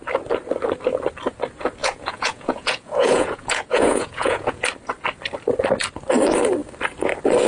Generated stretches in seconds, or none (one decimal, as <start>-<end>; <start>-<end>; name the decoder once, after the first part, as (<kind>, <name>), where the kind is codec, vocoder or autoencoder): 1.8-4.6 (vocoder, Vocos)